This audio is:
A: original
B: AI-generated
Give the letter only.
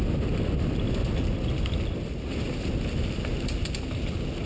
A